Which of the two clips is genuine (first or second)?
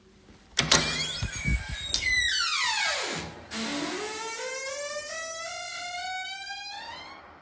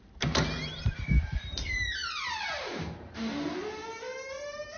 first